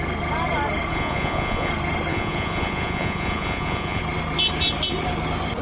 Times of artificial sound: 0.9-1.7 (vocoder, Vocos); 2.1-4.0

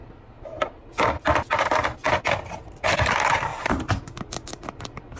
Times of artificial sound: none

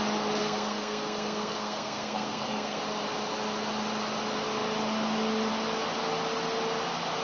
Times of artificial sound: 0.4-2.8 (codec, SNAC)

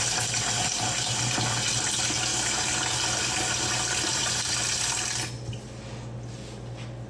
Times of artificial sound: none

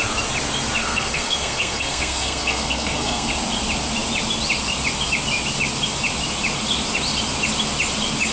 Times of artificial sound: 0.8-3.3 (codec, SNAC)